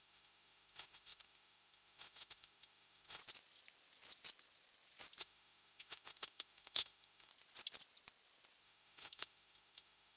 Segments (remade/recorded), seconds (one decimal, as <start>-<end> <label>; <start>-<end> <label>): 0.0-3.2 remade; 3.2-5.2 recorded; 5.2-7.3 remade; 7.3-8.6 recorded; 8.6-10.2 remade